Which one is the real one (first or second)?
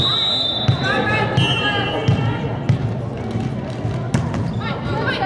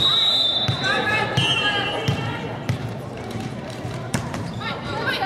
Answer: first